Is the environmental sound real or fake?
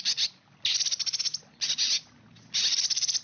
real